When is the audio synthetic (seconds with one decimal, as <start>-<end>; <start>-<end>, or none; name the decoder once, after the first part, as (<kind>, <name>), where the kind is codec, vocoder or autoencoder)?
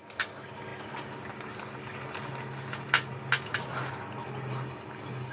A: none